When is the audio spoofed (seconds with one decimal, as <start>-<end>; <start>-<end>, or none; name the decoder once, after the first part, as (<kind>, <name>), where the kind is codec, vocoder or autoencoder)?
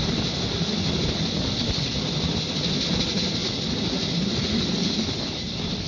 none